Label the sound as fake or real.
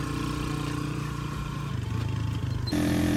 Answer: real